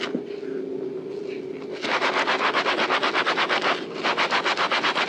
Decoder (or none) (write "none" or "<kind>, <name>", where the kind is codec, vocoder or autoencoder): none